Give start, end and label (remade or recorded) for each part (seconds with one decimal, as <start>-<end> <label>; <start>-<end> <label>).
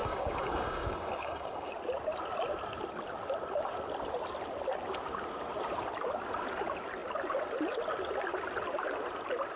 0.0-1.7 remade; 1.7-9.6 recorded